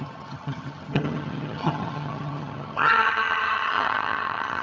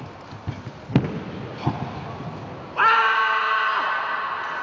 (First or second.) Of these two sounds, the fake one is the first